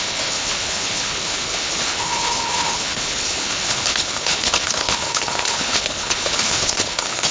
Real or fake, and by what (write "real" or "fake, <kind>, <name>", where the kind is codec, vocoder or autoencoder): fake, codec, HILCodec